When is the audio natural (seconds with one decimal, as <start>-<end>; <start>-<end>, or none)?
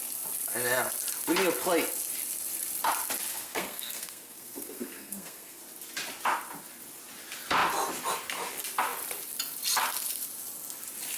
0.0-3.3; 5.6-11.2